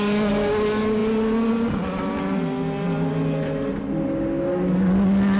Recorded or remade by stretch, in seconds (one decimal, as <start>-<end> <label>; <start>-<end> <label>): 0.0-5.4 recorded